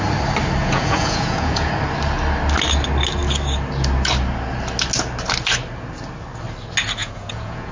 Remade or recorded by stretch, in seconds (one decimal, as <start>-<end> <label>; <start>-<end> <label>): 0.0-0.6 recorded; 0.6-1.7 remade; 1.7-7.0 recorded; 7.0-7.7 remade